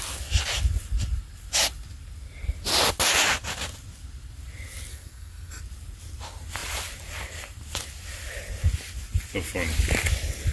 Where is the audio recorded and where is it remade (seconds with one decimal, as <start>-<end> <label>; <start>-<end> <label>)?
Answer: 0.0-4.9 recorded; 4.9-5.6 remade; 5.6-10.5 recorded